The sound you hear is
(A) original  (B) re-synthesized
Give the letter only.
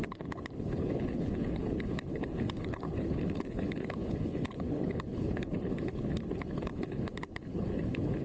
B